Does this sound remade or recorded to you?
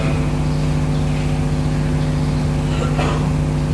recorded